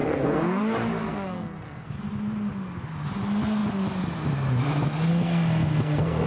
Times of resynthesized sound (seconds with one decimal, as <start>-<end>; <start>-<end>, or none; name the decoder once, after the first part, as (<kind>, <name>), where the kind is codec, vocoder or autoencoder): 0.0-0.6 (codec, SNAC); 1.0-2.0; 5.1-6.3